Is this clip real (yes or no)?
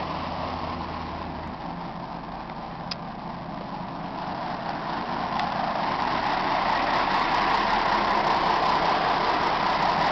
yes